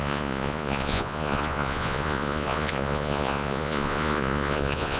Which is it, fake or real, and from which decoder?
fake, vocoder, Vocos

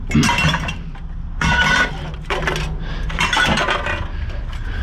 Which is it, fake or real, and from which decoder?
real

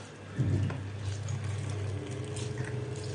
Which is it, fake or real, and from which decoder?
real